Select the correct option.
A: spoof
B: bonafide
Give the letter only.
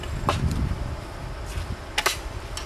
B